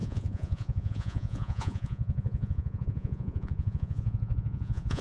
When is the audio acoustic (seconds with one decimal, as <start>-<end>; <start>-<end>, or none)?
none